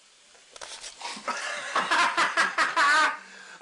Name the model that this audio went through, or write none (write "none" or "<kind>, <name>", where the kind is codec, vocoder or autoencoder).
none